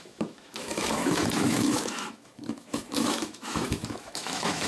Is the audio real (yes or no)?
no